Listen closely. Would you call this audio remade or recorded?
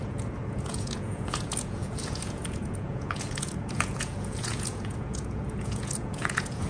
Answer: remade